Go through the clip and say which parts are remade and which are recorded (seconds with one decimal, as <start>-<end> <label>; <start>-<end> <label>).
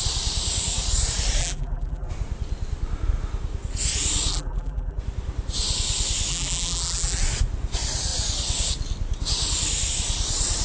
0.0-1.4 recorded; 1.4-2.1 remade; 2.1-4.3 recorded; 4.3-5.0 remade; 5.0-6.3 recorded; 6.3-7.2 remade; 7.2-10.6 recorded